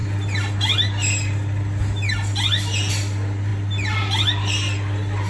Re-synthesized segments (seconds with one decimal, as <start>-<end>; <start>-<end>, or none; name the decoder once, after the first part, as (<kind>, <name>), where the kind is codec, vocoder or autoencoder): none